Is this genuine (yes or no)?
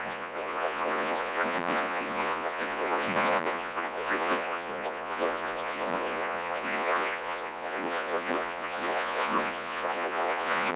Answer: no